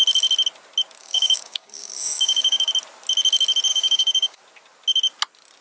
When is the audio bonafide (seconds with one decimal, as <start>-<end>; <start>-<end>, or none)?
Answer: 0.0-1.0; 2.7-3.7; 4.4-5.6